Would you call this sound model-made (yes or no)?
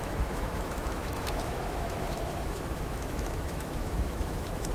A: yes